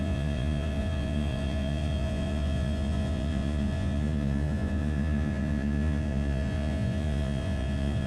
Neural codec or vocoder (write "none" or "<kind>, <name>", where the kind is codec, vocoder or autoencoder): vocoder, Vocos